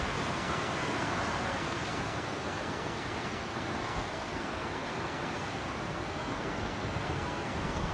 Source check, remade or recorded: remade